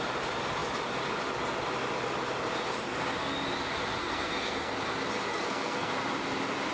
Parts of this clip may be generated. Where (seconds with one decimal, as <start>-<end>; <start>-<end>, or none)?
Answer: 4.0-4.7; 5.3-5.9